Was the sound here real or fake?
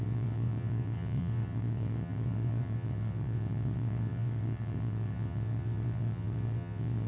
fake